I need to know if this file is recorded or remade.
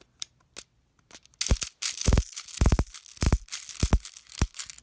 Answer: recorded